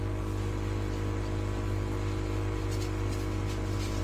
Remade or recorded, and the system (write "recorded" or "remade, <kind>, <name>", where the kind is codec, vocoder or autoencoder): recorded